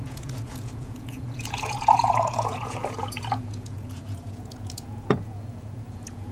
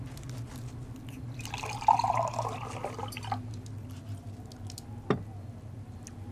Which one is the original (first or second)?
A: second